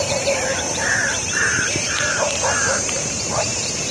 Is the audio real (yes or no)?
no